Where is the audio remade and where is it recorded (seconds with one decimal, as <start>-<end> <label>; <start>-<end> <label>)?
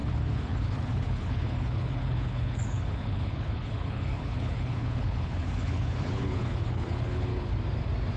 0.0-7.5 remade; 7.5-8.2 recorded